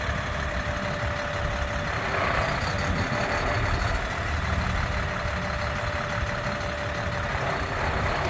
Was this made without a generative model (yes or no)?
yes